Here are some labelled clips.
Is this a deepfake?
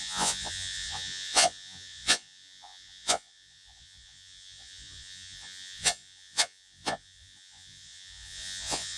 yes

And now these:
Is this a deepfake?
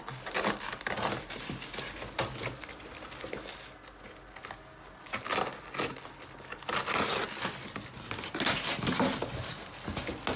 no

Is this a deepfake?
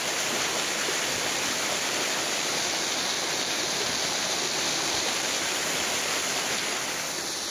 no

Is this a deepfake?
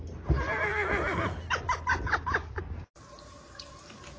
no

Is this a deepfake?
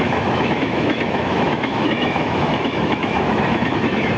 yes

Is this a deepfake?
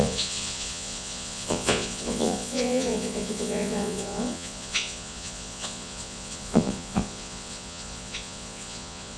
yes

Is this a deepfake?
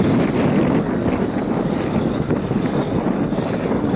no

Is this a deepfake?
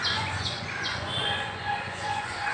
yes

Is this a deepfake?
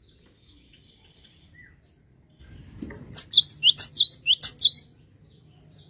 no